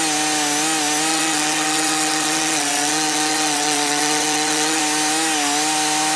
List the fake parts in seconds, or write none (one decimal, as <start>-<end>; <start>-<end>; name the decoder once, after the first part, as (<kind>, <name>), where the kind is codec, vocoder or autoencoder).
1.1-4.8 (vocoder, WaveNeXt)